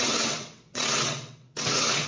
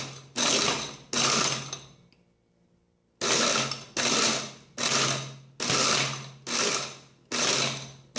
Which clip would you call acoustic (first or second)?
second